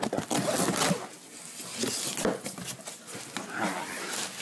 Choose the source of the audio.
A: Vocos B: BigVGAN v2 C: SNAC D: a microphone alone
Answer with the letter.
D